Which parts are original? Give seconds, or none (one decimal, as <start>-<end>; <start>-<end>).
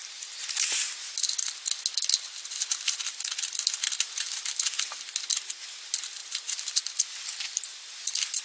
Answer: 0.0-8.4